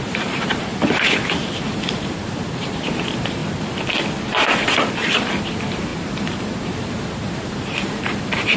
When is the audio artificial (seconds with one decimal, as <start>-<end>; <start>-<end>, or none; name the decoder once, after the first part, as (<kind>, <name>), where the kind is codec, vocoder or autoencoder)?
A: 0.0-3.4 (vocoder, BigVGAN v2); 4.9-8.6